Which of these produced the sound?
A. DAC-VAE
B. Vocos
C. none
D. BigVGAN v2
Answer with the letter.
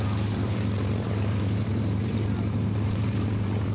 D